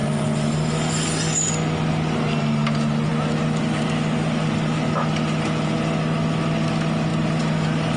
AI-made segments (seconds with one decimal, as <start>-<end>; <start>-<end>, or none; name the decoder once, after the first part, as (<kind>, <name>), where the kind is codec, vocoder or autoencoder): none